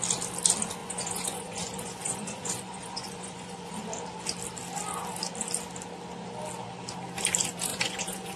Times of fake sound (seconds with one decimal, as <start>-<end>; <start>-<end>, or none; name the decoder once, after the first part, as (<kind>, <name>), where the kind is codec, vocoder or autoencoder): 0.8-3.7 (vocoder, Vocos); 7.7-8.4